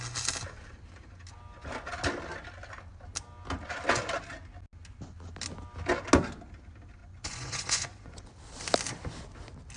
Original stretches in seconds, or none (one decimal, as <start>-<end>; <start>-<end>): 0.0-7.0; 8.2-9.8